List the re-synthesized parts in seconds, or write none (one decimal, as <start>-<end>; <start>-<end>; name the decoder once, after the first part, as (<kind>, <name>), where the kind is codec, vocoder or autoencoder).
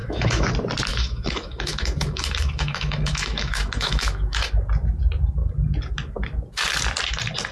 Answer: 0.0-0.5 (autoencoder, DAC-VAE); 0.9-4.5